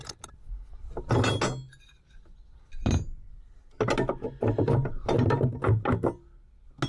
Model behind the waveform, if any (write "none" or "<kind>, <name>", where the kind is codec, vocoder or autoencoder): none